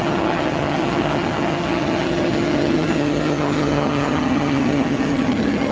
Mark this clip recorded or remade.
remade